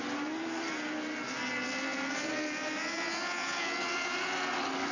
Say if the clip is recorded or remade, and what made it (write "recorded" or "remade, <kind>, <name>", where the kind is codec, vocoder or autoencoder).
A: recorded